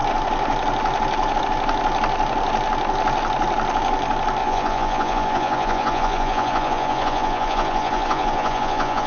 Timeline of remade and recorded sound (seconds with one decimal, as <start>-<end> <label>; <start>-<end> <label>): 0.0-4.4 recorded; 4.4-9.1 remade

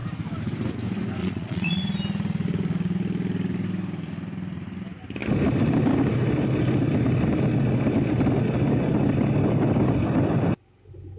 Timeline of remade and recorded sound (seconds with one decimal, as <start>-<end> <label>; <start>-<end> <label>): 0.0-1.2 recorded; 1.2-1.8 remade; 1.8-11.2 recorded